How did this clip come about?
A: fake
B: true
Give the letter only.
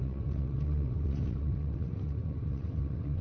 A